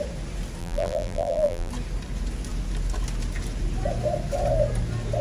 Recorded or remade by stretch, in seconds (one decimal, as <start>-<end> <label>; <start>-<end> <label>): 0.0-0.6 recorded; 0.6-1.7 remade; 1.7-5.2 recorded